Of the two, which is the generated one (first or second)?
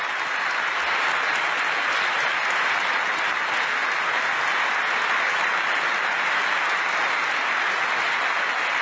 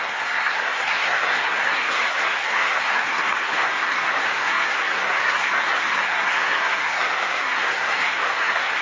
second